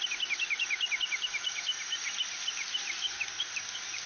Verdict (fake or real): real